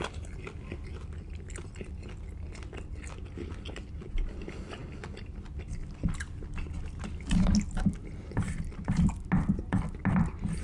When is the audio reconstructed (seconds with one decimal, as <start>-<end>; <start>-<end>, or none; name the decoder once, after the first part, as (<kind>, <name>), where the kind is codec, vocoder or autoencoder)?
none